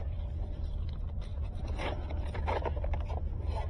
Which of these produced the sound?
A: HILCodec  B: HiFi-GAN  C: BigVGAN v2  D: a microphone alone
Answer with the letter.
C